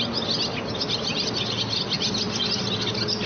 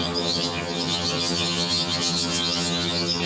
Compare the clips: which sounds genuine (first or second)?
first